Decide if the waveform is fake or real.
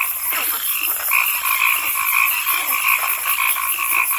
real